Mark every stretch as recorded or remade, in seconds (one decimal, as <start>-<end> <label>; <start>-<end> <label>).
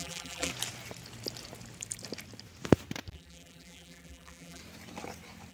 0.0-0.5 remade; 0.5-3.1 recorded; 3.1-4.6 remade; 4.6-5.5 recorded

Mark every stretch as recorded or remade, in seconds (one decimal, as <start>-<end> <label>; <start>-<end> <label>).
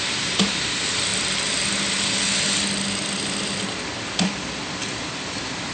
0.0-1.1 recorded; 1.1-1.6 remade; 1.6-4.8 recorded; 4.8-5.7 remade